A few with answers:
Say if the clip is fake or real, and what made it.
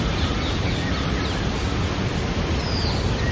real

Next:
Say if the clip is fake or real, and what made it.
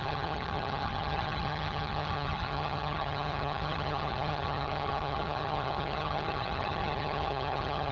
fake, vocoder, HiFi-GAN